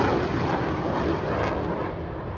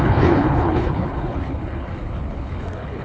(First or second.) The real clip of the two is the first